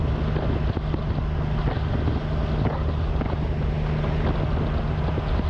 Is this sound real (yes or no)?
yes